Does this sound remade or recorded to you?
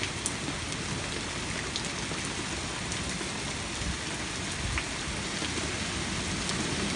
recorded